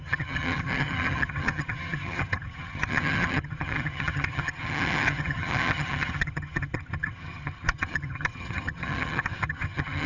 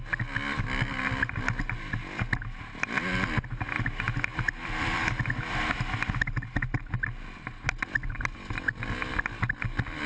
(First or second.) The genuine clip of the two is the second